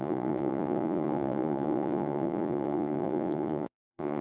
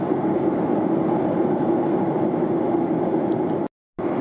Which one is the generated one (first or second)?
first